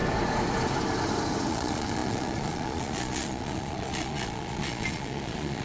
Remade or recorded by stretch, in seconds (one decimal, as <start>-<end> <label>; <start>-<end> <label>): 0.0-1.5 recorded; 1.5-5.6 remade